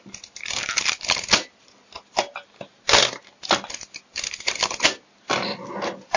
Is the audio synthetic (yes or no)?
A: no